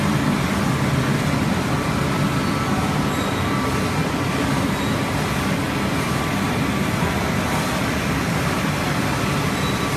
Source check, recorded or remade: recorded